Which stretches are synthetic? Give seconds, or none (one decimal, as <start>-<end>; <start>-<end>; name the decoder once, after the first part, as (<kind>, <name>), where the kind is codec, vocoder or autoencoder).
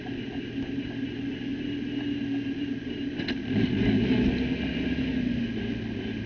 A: none